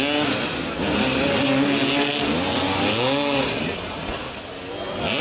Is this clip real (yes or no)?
yes